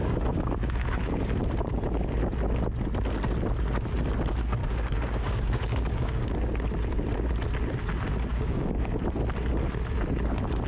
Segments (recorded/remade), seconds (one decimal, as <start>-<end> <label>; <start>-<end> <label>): 0.0-1.4 remade; 1.4-4.6 recorded; 4.6-6.2 remade; 6.2-8.3 recorded; 8.3-9.0 remade; 9.0-10.7 recorded

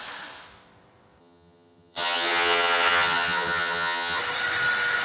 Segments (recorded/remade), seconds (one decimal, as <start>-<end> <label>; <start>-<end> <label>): 0.0-1.2 recorded; 1.2-4.2 remade; 4.2-5.0 recorded

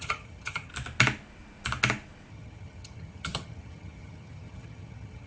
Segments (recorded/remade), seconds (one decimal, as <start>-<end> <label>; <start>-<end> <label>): 0.0-0.7 remade; 0.7-2.3 recorded; 2.3-5.3 remade

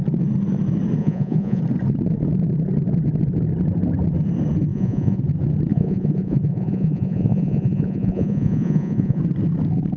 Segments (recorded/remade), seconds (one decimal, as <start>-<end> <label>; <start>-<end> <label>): 0.0-1.0 recorded; 1.0-1.6 remade; 1.6-4.7 recorded; 4.7-5.2 remade; 5.2-5.7 recorded; 5.7-9.2 remade; 9.2-10.0 recorded

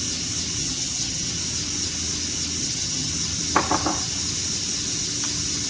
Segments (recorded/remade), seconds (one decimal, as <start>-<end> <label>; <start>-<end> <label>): 0.0-0.6 recorded; 0.6-1.3 remade; 1.3-2.6 recorded; 2.6-3.1 remade; 3.1-5.7 recorded

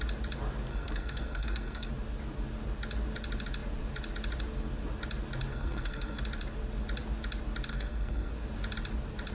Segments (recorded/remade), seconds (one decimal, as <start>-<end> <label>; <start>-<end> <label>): 0.0-0.7 recorded; 0.7-1.9 remade; 1.9-5.5 recorded; 5.5-6.2 remade; 6.2-7.7 recorded; 7.7-8.3 remade; 8.3-9.3 recorded